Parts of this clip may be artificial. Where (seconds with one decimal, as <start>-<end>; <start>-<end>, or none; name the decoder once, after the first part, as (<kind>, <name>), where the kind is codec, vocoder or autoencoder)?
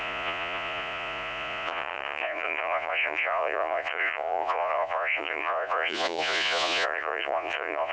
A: 0.0-7.9 (vocoder, Vocos)